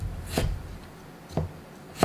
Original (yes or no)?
yes